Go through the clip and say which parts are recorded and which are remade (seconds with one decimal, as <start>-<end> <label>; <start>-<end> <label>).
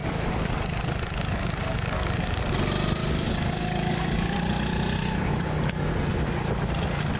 0.0-2.4 remade; 2.4-3.0 recorded; 3.0-4.5 remade; 4.5-5.3 recorded; 5.3-6.0 remade; 6.0-7.2 recorded